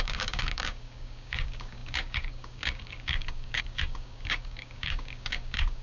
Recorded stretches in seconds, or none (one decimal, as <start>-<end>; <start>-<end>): none